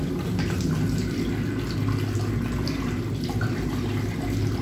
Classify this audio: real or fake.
real